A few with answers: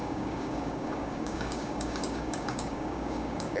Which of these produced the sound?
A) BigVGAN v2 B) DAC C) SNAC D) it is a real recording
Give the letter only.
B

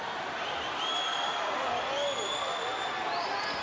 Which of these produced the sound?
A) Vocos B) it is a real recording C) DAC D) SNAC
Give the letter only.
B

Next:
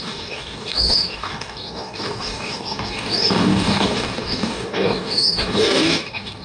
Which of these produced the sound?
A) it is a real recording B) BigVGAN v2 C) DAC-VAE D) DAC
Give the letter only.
D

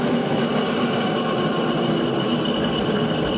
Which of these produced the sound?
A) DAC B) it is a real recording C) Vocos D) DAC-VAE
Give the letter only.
B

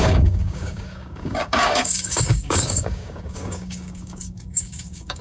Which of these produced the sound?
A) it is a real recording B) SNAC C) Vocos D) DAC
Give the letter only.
D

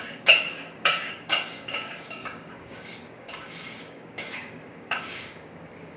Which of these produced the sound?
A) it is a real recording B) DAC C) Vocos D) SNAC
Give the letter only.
B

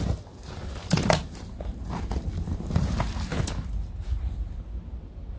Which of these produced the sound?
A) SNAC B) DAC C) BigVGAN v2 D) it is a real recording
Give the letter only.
D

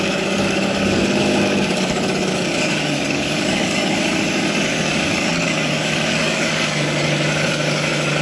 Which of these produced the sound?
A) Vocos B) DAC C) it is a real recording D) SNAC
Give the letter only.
B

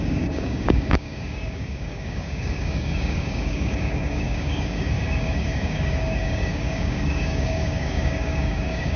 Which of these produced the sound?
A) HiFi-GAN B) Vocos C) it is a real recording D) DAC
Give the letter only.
D